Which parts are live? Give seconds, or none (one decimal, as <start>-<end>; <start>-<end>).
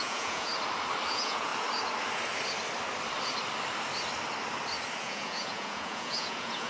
0.5-1.1; 1.5-5.0